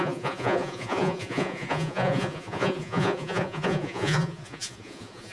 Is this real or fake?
fake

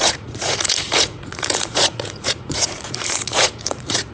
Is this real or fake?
fake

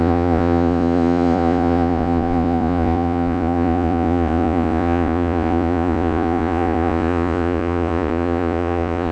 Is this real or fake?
fake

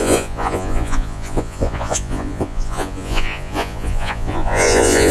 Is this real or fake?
fake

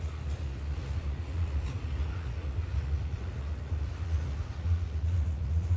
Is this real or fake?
fake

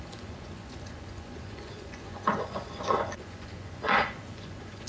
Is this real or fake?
fake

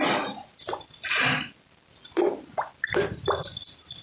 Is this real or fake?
real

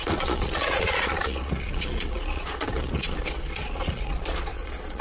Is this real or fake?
fake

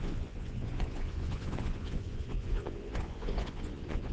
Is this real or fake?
fake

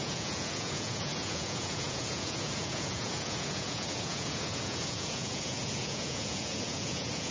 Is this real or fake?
fake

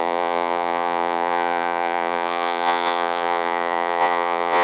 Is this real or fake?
fake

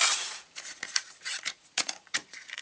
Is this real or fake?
fake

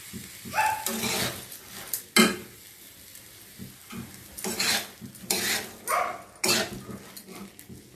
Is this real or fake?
real